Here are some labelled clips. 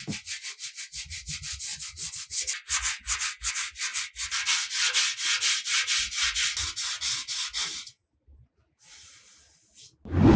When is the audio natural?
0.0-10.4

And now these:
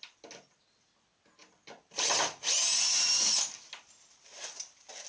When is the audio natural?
0.0-5.1

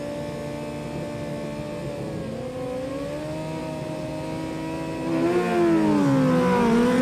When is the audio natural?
0.0-3.6; 4.1-7.0